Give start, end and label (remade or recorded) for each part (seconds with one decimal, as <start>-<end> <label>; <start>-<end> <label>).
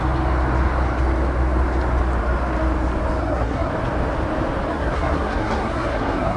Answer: 0.0-3.2 recorded; 3.2-3.7 remade; 3.7-4.7 recorded; 4.7-6.4 remade